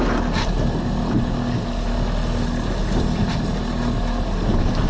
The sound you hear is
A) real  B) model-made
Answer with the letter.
A